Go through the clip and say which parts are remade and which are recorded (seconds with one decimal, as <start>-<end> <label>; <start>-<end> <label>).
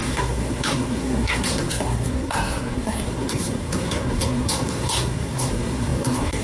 0.0-6.4 remade